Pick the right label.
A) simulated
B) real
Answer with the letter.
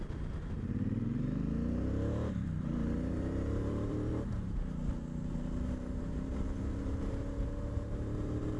A